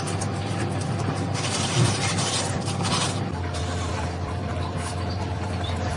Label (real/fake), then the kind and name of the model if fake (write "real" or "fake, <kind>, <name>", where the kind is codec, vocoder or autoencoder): fake, vocoder, BigVGAN v2